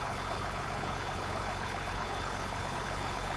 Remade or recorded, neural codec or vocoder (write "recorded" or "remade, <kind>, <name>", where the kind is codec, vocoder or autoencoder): remade, codec, HILCodec